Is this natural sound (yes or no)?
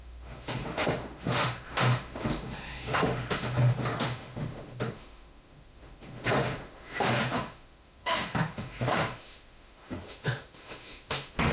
no